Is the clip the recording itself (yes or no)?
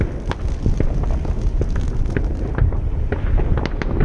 yes